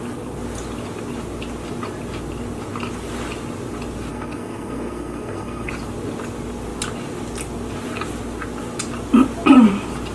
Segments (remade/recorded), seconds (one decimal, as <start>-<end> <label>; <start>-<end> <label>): 0.0-4.1 recorded; 4.1-5.7 remade; 5.7-10.1 recorded